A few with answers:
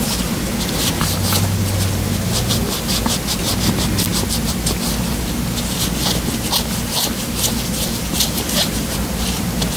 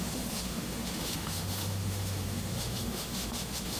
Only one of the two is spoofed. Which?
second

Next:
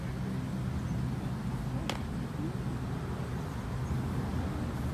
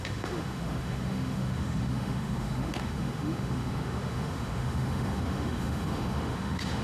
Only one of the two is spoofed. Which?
second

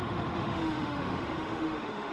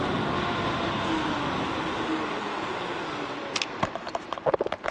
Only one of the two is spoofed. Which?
first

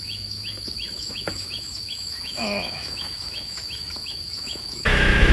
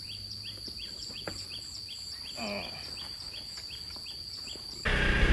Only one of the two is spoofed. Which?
first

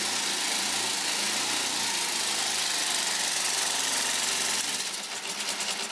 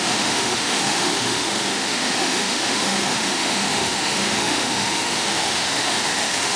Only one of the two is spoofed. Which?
second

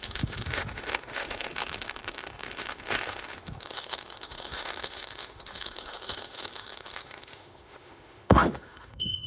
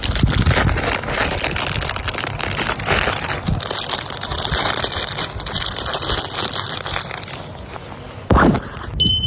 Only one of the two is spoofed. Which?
first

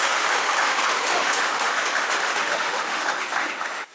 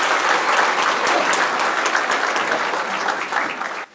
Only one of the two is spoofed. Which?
first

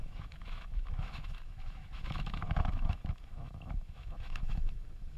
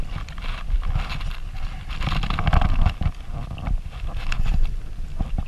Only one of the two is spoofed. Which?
first